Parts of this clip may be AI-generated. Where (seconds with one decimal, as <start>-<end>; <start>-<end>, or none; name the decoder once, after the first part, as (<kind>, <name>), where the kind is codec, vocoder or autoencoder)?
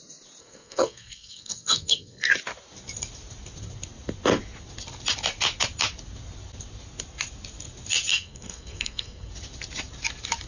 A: 0.4-2.3 (codec, SNAC); 8.1-9.3